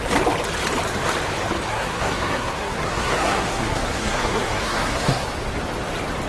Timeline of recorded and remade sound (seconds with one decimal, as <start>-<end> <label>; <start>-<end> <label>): 0.0-1.7 recorded; 1.7-5.3 remade; 5.3-6.3 recorded